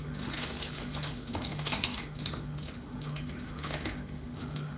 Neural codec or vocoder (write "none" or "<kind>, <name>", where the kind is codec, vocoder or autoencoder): autoencoder, DAC-VAE